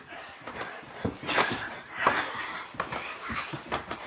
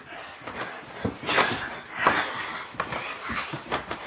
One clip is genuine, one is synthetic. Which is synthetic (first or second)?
first